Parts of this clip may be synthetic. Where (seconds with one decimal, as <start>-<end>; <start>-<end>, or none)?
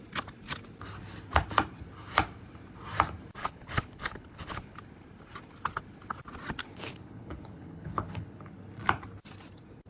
3.4-4.8; 6.6-8.5